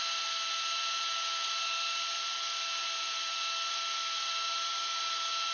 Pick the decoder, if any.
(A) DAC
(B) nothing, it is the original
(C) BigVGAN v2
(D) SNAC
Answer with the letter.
B